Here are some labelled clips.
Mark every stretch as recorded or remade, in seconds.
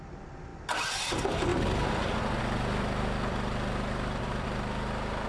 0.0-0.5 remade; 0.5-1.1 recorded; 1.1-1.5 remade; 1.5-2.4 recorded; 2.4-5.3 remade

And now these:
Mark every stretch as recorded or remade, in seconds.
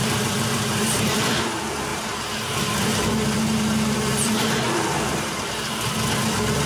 0.0-1.3 remade; 1.3-1.9 recorded; 1.9-5.9 remade; 5.9-6.7 recorded